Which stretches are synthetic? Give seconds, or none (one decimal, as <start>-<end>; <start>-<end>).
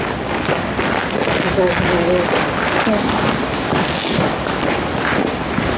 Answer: none